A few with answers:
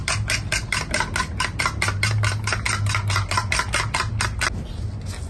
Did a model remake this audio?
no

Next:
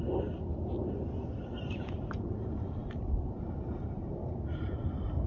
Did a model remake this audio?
no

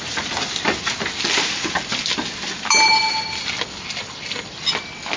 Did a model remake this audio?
no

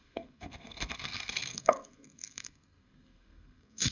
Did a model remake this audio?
yes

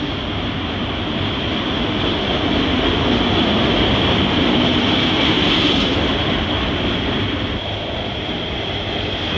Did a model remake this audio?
no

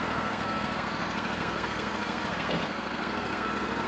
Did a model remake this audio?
yes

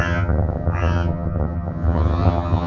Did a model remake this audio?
yes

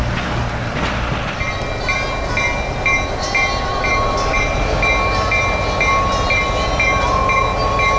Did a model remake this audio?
no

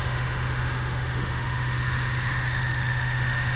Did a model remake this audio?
yes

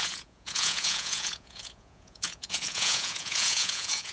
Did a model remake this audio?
yes